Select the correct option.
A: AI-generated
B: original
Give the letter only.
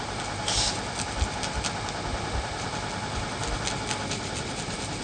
B